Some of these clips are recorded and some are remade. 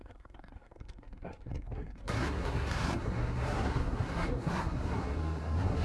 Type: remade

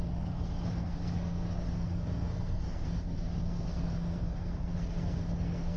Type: remade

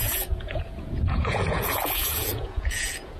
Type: remade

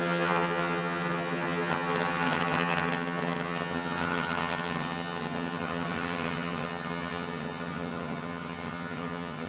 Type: remade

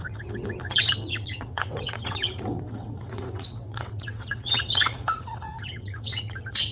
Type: remade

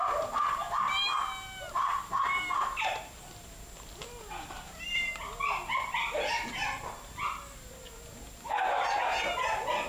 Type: recorded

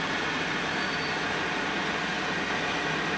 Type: recorded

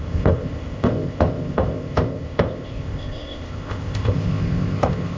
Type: remade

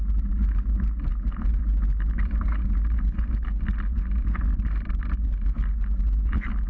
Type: recorded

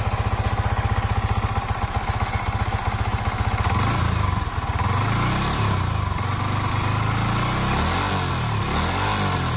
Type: recorded